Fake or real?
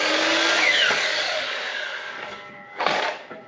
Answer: fake